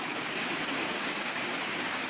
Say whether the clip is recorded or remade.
remade